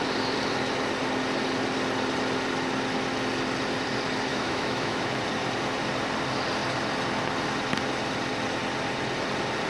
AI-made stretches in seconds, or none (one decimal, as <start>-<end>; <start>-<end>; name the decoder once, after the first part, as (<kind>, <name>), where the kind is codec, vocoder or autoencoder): 4.3-5.2 (autoencoder, DAC-VAE)